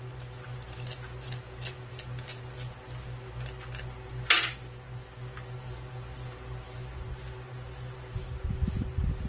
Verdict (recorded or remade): recorded